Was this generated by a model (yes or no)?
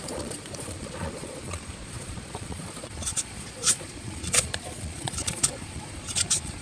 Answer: yes